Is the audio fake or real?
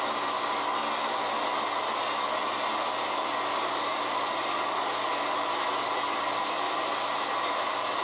real